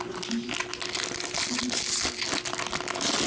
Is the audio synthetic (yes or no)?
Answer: no